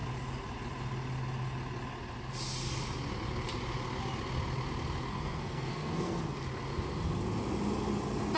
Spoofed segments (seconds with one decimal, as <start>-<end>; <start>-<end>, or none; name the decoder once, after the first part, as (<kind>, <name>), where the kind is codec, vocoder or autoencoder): 5.1-6.2 (codec, SNAC)